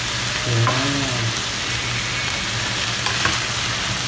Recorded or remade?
recorded